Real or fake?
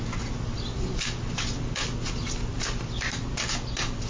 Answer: real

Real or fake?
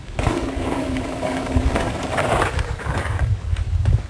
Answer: fake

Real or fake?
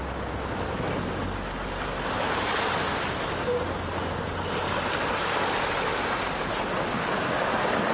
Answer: real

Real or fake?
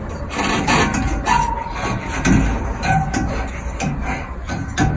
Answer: real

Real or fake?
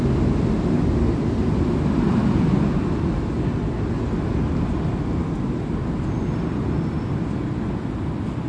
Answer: real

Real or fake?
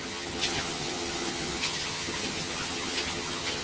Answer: fake